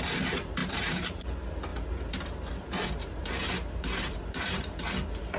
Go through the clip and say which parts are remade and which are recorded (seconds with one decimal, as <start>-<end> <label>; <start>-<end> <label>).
0.0-0.6 recorded; 0.6-1.2 remade; 1.2-1.7 recorded; 1.7-4.8 remade; 4.8-5.4 recorded